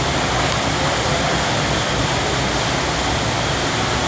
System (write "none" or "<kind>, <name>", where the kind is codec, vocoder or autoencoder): none